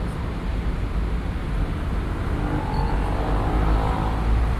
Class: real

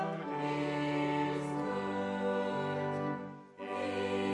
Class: real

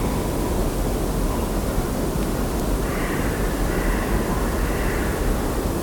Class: real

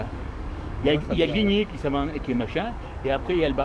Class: fake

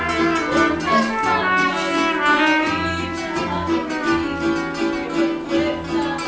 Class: real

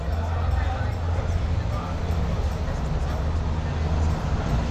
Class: real